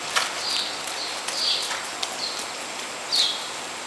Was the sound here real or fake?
real